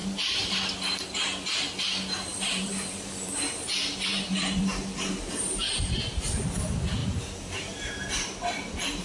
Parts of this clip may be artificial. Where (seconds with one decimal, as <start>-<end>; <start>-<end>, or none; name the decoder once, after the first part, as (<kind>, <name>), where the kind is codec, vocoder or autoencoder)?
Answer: 0.0-0.6 (vocoder, BigVGAN v2); 2.3-3.3; 4.1-6.3; 7.0-7.9